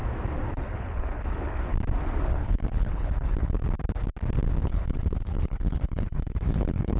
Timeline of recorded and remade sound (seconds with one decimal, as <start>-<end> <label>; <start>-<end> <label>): 0.0-0.5 recorded; 0.5-1.7 remade; 1.7-2.3 recorded; 2.3-3.6 remade; 3.6-4.6 recorded; 4.6-7.0 remade